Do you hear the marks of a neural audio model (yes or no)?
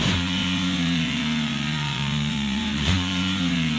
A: yes